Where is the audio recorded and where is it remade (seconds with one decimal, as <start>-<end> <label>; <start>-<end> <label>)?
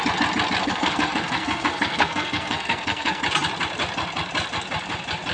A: 0.0-0.6 recorded; 0.6-3.2 remade; 3.2-5.3 recorded